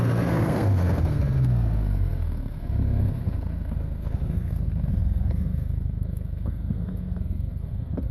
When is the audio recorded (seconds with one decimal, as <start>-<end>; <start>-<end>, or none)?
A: none